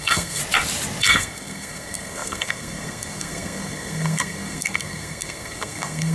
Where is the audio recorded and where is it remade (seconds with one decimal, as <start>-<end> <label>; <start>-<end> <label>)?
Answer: 0.0-0.4 remade; 0.4-1.0 recorded; 1.0-6.1 remade